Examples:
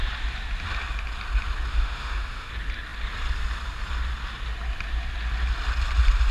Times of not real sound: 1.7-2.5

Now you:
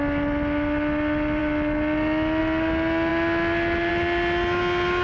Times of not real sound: none